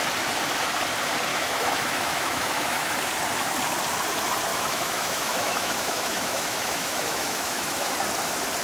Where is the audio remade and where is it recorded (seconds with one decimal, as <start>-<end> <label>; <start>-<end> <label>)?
0.0-1.3 recorded; 1.3-2.9 remade; 2.9-4.5 recorded; 4.5-7.9 remade; 7.9-8.6 recorded

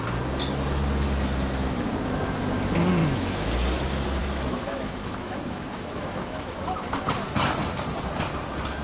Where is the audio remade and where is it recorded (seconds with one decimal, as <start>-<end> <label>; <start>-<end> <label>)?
0.0-3.0 recorded; 3.0-3.5 remade; 3.5-4.2 recorded; 4.2-7.0 remade; 7.0-8.8 recorded

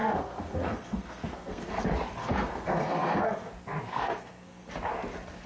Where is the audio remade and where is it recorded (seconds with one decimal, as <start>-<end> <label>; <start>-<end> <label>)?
0.0-1.8 remade; 1.8-2.2 recorded; 2.2-3.5 remade; 3.5-3.9 recorded; 3.9-4.7 remade; 4.7-5.5 recorded

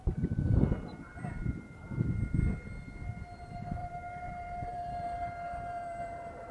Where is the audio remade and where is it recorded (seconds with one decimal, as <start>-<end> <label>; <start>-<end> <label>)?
0.0-3.8 recorded; 3.8-6.5 remade

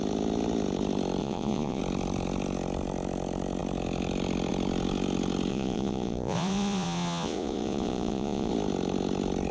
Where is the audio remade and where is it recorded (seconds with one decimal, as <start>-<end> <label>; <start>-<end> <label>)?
0.0-1.2 recorded; 1.2-1.8 remade; 1.8-5.5 recorded; 5.5-8.5 remade; 8.5-9.5 recorded